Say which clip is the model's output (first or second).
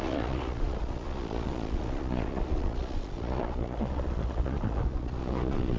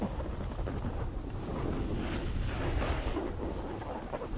first